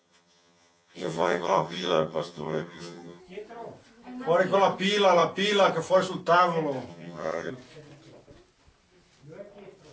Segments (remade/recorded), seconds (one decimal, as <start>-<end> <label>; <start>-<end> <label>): 0.0-3.2 remade; 3.2-6.9 recorded; 6.9-7.5 remade; 7.5-9.9 recorded